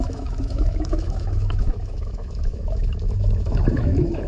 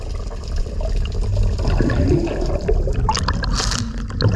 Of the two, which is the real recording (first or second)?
second